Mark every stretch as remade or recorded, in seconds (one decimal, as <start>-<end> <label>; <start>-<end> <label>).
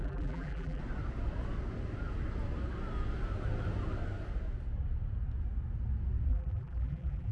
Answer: 0.0-0.8 remade; 0.8-6.3 recorded; 6.3-7.3 remade